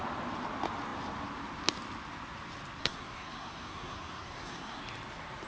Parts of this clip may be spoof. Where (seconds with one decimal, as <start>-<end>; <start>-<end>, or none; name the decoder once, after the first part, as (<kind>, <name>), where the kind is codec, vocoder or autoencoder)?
2.8-4.8 (codec, SNAC)